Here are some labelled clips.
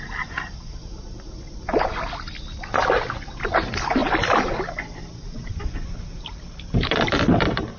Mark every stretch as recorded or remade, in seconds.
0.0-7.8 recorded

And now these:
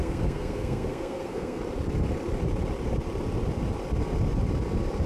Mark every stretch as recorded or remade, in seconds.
0.0-1.6 remade; 1.6-5.1 recorded